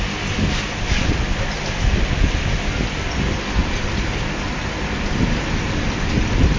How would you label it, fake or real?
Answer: real